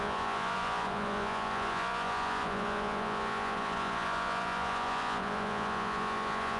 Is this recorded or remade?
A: remade